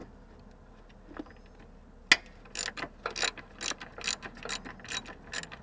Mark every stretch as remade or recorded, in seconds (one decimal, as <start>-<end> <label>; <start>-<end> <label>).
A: 0.0-5.6 recorded